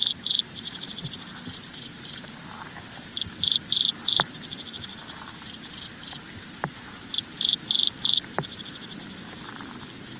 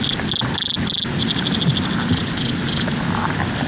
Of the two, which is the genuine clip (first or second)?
second